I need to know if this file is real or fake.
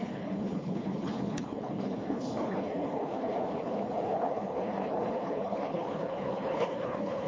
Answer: fake